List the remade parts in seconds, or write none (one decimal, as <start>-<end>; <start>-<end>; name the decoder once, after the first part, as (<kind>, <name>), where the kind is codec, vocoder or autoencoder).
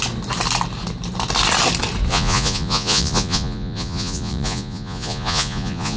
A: 2.1-6.0 (vocoder, Vocos)